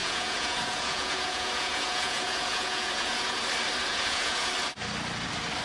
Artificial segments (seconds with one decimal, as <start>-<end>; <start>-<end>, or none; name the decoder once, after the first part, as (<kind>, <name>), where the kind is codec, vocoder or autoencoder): 0.0-3.4 (vocoder, Vocos); 3.9-4.5